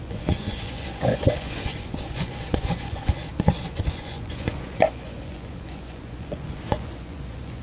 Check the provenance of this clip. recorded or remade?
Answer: remade